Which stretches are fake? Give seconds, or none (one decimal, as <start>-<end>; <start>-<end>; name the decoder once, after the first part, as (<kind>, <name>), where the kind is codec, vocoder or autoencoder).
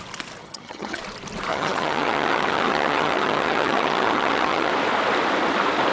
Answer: 0.4-1.0 (vocoder, HiFi-GAN); 1.5-4.7